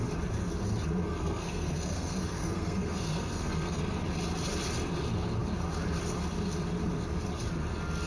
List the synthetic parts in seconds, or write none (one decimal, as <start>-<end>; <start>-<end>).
1.0-3.8